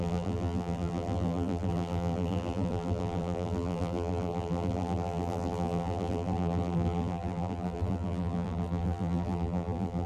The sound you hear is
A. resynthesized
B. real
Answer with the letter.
A